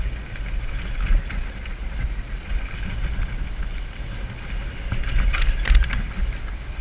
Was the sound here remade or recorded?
recorded